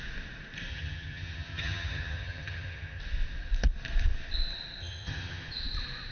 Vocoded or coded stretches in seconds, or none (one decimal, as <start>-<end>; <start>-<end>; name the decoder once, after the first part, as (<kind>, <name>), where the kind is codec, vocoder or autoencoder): 0.7-3.0 (vocoder, HiFi-GAN); 4.8-5.5